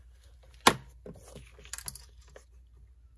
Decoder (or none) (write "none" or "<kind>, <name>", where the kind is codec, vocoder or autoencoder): none